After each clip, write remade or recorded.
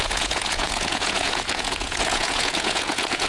remade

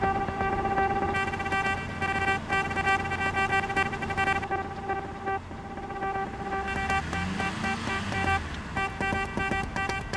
recorded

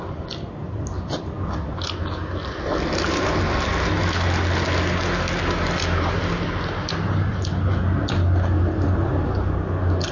recorded